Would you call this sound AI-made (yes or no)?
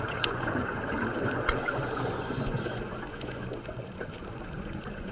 yes